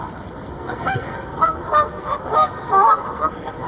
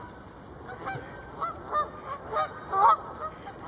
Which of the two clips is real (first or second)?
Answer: second